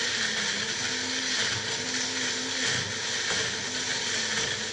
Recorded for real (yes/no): yes